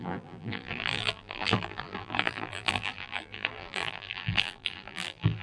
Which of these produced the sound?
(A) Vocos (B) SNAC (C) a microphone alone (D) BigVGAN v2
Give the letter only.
D